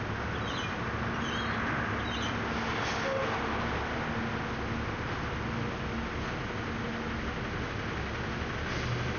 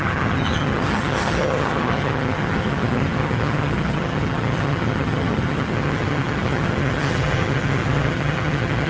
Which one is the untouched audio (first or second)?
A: first